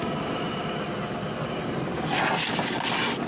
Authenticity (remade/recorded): recorded